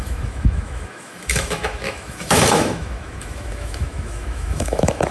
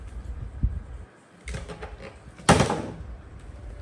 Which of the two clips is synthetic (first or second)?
first